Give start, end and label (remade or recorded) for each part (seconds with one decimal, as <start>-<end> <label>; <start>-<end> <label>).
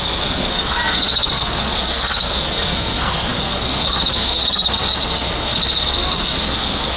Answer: 0.0-7.0 remade